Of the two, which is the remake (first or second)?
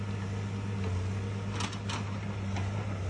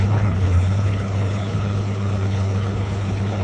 second